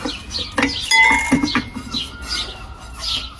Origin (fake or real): real